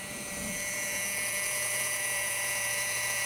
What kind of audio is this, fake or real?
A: fake